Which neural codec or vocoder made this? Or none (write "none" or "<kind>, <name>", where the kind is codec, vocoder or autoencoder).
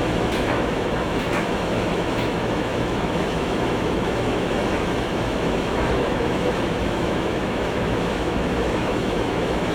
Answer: autoencoder, DAC-VAE